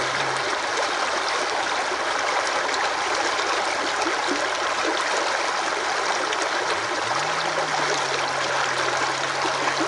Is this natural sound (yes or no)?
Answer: no